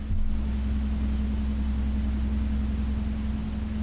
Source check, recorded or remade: recorded